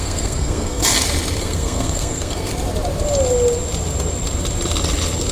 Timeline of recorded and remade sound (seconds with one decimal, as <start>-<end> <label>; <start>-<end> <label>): 0.0-0.8 remade; 0.8-1.4 recorded; 1.4-2.5 remade; 2.5-5.3 recorded